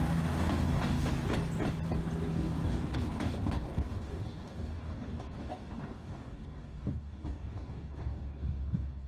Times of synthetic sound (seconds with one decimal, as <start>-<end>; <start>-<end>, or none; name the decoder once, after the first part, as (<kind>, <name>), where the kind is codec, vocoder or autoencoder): 0.0-1.1 (codec, DAC); 2.3-9.1